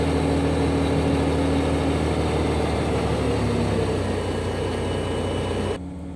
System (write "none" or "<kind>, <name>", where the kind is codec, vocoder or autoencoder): none